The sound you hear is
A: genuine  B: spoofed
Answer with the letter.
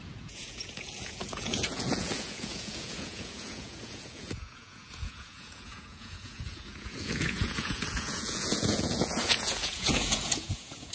B